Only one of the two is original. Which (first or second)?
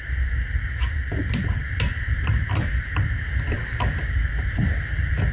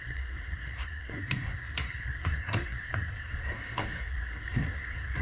first